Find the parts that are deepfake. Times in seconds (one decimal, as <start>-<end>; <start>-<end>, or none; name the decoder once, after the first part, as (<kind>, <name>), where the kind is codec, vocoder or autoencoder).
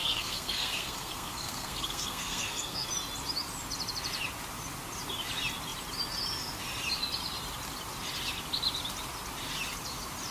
0.0-2.9 (codec, SNAC)